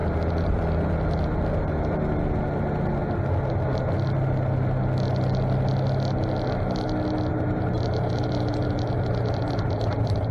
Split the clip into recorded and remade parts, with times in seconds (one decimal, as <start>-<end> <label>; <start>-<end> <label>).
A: 0.0-0.6 remade; 0.6-7.3 recorded; 7.3-10.3 remade